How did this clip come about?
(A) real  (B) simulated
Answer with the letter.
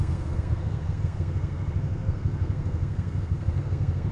B